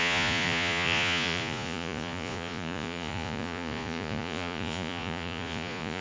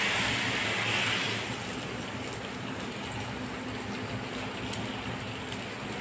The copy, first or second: first